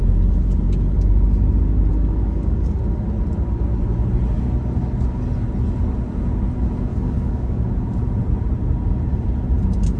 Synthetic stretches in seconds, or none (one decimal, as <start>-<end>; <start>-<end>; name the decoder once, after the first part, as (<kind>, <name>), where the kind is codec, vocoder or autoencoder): 1.9-2.8 (codec, DAC); 6.9-7.7